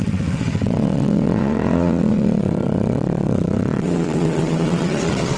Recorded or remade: remade